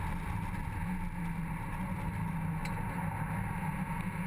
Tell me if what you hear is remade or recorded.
recorded